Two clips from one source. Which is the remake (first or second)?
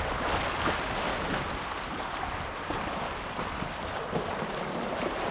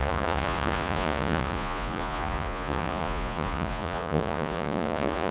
second